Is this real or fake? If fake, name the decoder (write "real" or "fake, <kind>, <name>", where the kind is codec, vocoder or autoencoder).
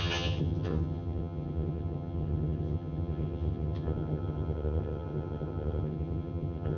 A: fake, vocoder, HiFi-GAN